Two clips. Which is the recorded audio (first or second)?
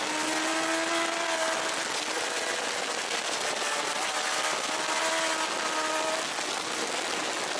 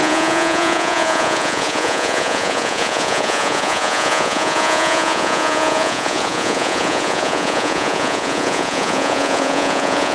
first